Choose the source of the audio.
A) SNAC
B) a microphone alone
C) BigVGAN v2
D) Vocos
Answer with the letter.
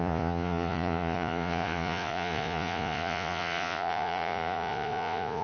D